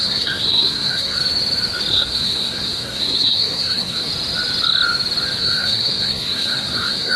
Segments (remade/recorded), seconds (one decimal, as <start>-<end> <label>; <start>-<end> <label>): 0.0-1.2 remade; 1.2-1.9 recorded; 1.9-4.1 remade; 4.1-5.4 recorded; 5.4-7.2 remade